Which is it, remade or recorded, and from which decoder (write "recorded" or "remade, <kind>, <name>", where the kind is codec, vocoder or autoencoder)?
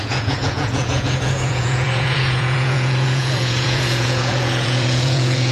remade, vocoder, Vocos